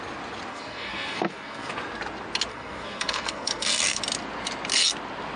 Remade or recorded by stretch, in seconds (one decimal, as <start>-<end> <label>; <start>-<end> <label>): 0.0-0.5 recorded; 0.5-1.7 remade; 1.7-2.5 recorded; 2.5-4.0 remade; 4.0-5.4 recorded

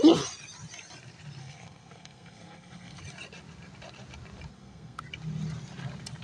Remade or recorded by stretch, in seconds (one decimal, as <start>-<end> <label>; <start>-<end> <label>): 0.0-1.4 recorded; 1.4-3.0 remade; 3.0-4.5 recorded; 4.5-5.0 remade; 5.0-6.2 recorded

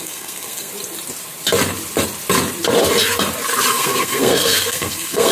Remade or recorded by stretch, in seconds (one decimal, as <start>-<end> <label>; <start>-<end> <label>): 0.0-0.7 remade; 0.7-3.7 recorded; 3.7-5.3 remade

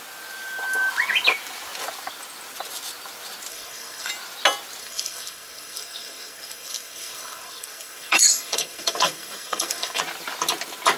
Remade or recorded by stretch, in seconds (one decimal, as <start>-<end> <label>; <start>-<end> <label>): 0.0-3.5 recorded; 3.5-4.1 remade; 4.1-4.8 recorded; 4.8-10.0 remade; 10.0-11.0 recorded

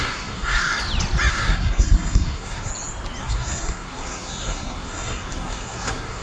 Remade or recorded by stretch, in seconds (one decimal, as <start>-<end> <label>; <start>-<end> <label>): 0.0-0.7 remade; 0.7-1.3 recorded; 1.3-2.7 remade; 2.7-3.2 recorded; 3.2-6.2 remade

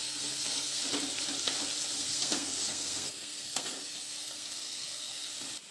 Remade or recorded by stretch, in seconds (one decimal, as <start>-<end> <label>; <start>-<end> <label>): 0.0-0.8 remade; 0.8-2.0 recorded; 2.0-5.3 remade; 5.3-5.7 recorded